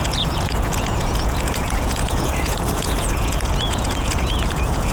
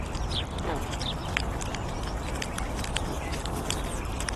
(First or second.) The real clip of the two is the second